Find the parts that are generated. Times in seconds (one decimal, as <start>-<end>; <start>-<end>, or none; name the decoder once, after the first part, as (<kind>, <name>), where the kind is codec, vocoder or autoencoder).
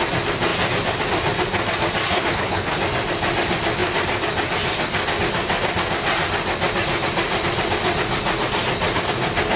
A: 2.1-2.8 (codec, HILCodec)